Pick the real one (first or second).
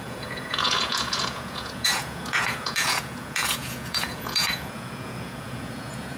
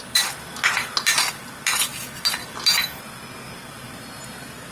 second